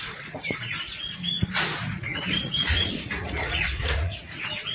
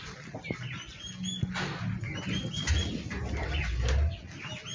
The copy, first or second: first